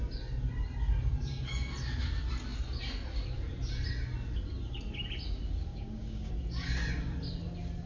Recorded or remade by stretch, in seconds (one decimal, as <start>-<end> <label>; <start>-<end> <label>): 0.0-5.7 recorded; 5.7-6.3 remade; 6.3-7.9 recorded